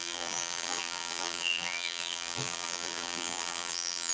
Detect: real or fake fake